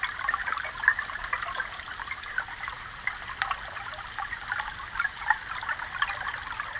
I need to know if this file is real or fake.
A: real